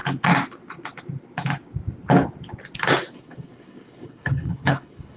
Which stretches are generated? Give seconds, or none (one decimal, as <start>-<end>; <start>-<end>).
3.1-5.2